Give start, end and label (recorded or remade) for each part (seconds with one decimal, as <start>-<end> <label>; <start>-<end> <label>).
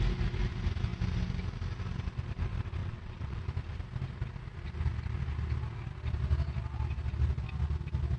0.0-2.8 recorded; 2.8-3.4 remade; 3.4-8.2 recorded